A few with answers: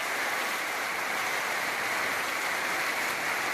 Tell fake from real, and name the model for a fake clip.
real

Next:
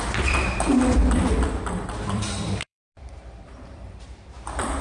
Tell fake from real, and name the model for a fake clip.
fake, vocoder, BigVGAN v2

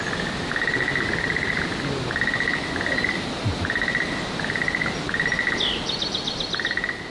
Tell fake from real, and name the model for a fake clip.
real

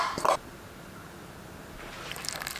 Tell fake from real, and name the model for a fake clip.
real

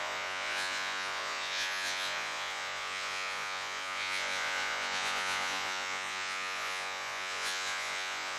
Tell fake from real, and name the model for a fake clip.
fake, vocoder, Vocos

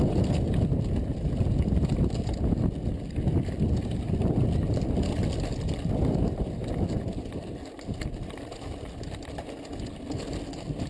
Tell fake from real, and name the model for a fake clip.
real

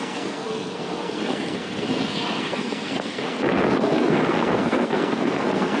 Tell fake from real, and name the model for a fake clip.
fake, codec, SNAC